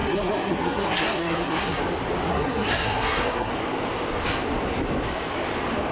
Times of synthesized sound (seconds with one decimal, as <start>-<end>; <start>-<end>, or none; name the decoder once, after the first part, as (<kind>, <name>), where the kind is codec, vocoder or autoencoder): 0.0-1.8 (codec, SNAC); 2.3-3.5